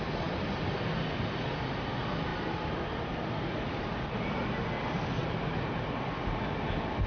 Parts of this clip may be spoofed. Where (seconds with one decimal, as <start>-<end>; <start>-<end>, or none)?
5.2-5.9